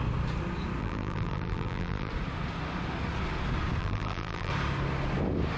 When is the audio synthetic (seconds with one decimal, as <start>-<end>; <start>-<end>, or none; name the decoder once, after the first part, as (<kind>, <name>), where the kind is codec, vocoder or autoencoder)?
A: 0.8-2.1 (vocoder, BigVGAN v2); 3.8-4.5